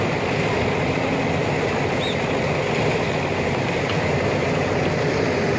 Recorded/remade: recorded